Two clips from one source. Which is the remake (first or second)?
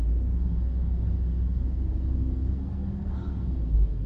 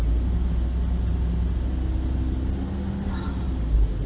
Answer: first